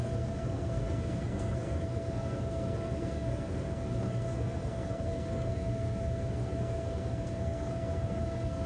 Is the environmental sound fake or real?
fake